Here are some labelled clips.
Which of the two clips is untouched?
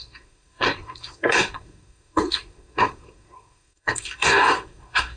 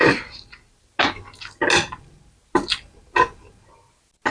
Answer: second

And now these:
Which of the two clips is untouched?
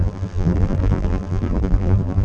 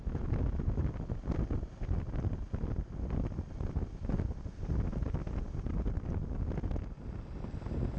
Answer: second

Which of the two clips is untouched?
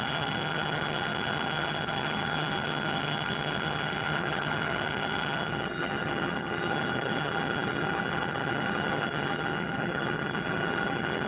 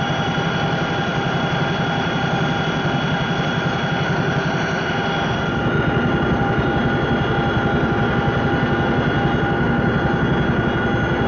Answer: second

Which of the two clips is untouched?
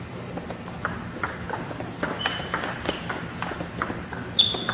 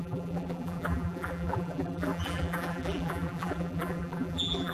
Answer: first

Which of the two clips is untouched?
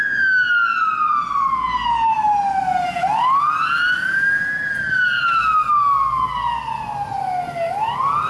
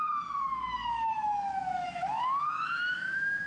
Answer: first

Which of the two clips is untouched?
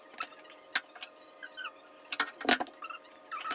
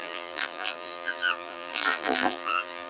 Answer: first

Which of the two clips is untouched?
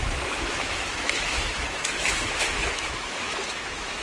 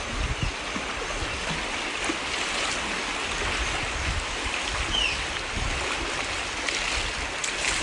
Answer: second